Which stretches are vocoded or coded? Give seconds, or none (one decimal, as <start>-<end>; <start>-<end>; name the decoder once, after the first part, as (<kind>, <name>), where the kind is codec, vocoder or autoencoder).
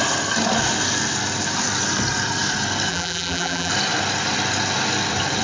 2.9-3.7 (vocoder, BigVGAN v2)